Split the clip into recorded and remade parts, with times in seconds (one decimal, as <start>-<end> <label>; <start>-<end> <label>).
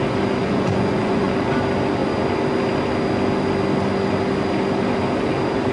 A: 0.0-0.4 recorded; 0.4-1.5 remade; 1.5-5.7 recorded